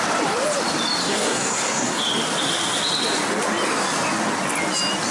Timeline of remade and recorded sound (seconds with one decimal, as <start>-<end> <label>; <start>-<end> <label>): 0.0-1.0 recorded; 1.0-2.0 remade; 2.0-5.1 recorded